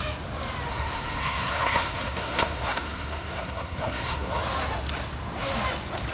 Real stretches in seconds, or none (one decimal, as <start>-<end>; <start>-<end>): 0.0-0.7; 4.4-6.1